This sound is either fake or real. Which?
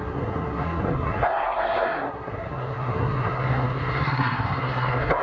fake